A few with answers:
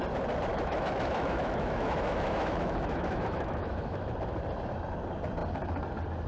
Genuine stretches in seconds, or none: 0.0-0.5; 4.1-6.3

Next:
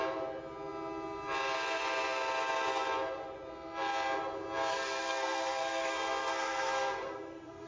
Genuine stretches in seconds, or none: 0.0-4.7

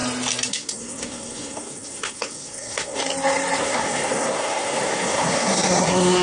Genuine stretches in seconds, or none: 0.0-0.5; 3.0-3.6

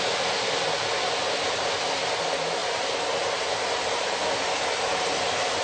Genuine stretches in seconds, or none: 0.0-5.6

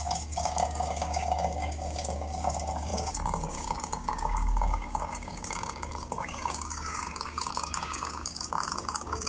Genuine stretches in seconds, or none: none

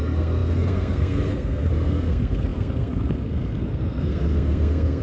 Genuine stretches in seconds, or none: none